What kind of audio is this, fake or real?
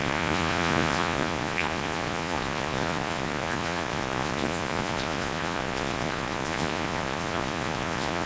fake